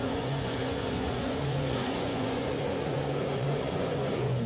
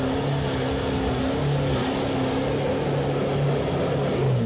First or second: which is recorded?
second